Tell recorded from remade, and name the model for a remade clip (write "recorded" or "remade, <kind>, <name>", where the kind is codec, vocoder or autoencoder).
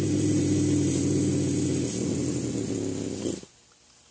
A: recorded